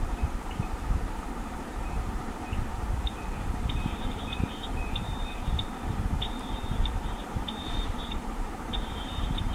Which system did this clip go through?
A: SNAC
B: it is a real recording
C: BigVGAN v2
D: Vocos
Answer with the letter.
C